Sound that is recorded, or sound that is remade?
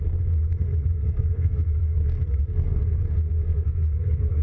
remade